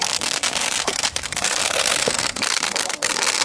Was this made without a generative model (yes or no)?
no